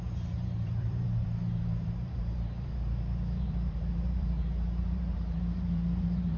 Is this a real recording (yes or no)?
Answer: no